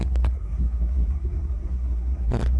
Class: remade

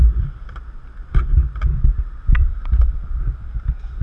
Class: recorded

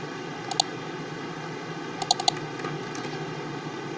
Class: recorded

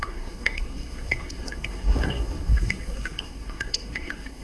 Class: remade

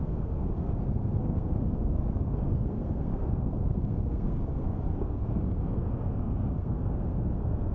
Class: remade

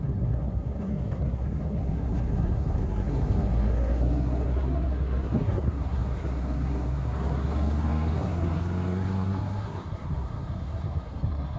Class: remade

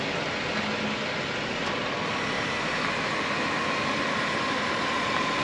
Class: recorded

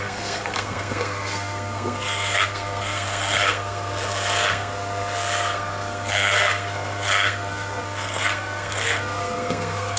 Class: remade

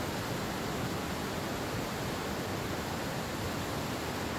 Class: recorded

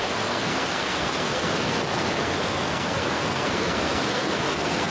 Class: remade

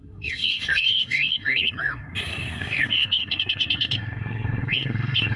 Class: remade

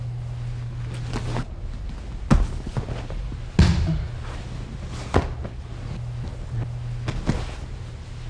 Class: recorded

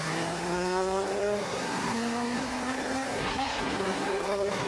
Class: remade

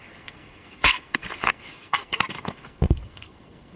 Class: remade